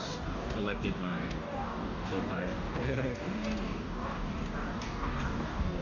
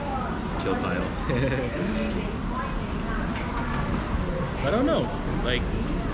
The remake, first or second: first